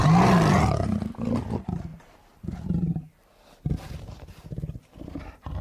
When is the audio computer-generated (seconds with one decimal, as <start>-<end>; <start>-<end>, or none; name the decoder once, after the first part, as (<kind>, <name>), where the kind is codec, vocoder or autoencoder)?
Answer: none